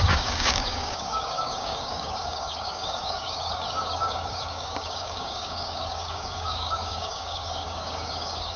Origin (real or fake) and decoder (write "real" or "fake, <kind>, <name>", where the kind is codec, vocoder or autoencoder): fake, codec, DAC